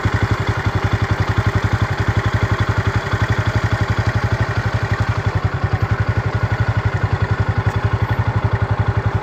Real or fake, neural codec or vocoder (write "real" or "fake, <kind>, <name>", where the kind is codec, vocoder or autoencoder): real